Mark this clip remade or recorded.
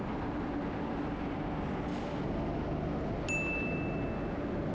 recorded